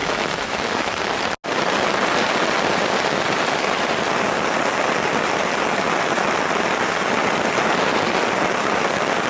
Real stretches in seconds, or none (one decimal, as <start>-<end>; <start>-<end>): 1.0-9.3

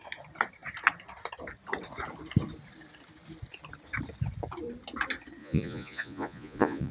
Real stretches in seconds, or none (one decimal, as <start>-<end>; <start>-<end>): 0.0-5.4

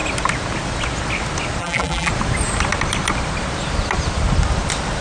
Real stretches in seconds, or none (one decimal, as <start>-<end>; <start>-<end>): 0.0-1.6; 2.1-5.0

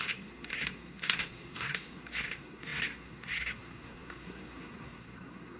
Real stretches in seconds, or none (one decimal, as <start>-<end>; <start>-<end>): none

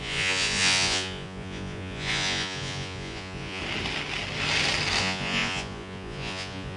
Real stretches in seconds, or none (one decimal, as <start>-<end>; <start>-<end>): 3.6-5.0

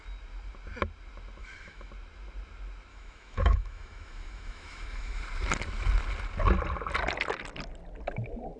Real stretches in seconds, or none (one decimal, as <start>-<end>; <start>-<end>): 0.0-1.4; 1.9-2.9; 5.2-8.6

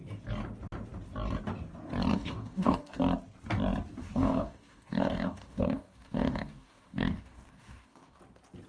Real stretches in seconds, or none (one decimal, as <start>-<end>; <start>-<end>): 0.0-2.1; 3.0-4.0; 8.2-8.7